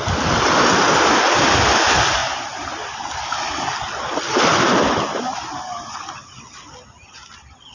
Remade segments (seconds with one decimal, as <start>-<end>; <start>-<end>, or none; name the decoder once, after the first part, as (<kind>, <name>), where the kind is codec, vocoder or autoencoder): none